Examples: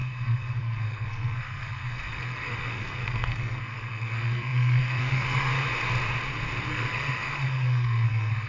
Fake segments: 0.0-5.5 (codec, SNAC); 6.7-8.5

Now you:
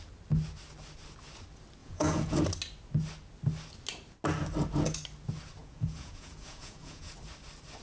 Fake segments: 1.8-2.4 (vocoder, Vocos); 5.6-7.1